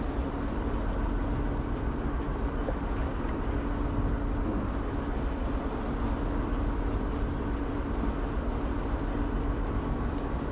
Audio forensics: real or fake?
real